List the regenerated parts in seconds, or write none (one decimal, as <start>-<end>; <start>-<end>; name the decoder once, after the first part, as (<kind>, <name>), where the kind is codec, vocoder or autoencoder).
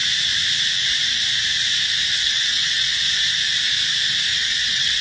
2.1-2.9 (vocoder, WaveNeXt); 4.3-5.0